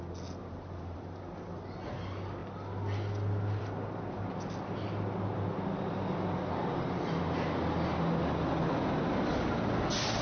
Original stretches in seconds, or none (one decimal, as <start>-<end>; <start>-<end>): 0.0-0.4; 1.2-6.6; 7.2-10.2